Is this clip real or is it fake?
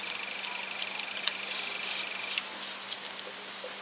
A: real